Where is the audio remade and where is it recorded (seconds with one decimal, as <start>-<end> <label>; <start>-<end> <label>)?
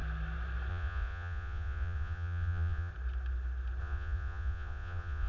0.0-0.7 recorded; 0.7-2.9 remade; 2.9-3.8 recorded; 3.8-5.3 remade